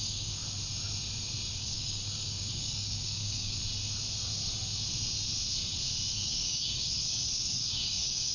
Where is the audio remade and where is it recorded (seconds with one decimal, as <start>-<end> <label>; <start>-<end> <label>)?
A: 0.0-0.4 remade; 0.4-1.6 recorded; 1.6-3.6 remade; 3.6-6.1 recorded; 6.1-8.3 remade